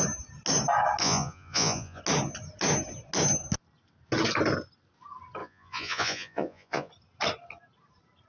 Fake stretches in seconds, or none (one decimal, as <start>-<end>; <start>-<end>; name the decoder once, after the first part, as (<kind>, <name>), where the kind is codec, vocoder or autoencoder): 1.0-2.0 (vocoder, Vocos); 5.4-6.9